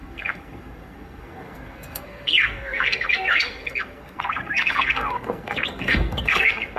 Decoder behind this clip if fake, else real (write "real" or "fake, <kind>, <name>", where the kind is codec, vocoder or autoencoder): fake, codec, SNAC